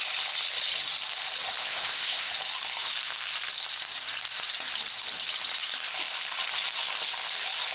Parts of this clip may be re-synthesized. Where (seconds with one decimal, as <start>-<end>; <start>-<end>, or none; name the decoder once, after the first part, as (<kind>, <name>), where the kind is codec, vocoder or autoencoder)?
1.6-2.3 (codec, ZipCodec)